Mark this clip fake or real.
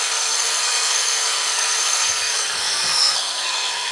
fake